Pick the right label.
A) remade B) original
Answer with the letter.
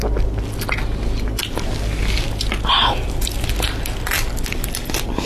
B